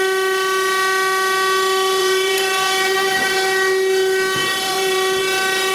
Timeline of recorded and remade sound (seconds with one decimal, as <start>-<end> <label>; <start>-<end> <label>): 0.0-2.0 recorded; 2.0-3.3 remade; 3.3-4.4 recorded; 4.4-5.2 remade; 5.2-5.7 recorded